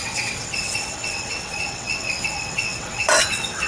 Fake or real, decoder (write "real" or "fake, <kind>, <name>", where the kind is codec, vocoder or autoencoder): fake, vocoder, WaveNeXt